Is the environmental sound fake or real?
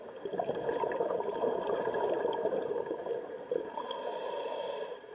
fake